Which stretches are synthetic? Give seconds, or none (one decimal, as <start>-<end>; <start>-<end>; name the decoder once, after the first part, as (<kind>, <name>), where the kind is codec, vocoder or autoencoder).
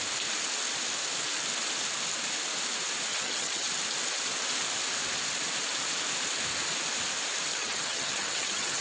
3.1-3.7 (vocoder, HiFi-GAN); 7.5-8.8